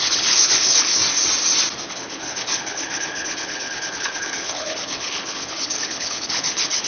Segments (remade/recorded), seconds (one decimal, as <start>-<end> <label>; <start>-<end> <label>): 0.0-1.0 remade; 1.0-1.9 recorded; 1.9-6.9 remade